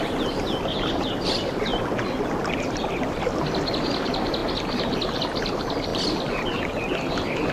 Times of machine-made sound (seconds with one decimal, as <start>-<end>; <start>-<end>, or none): 0.0-1.7; 2.5-4.4; 5.2-5.9; 6.6-7.5